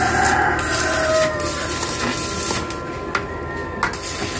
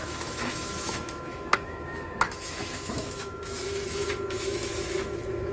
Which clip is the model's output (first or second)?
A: second